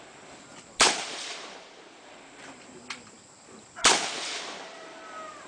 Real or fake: fake